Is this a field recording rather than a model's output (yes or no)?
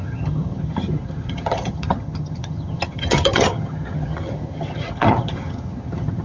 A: no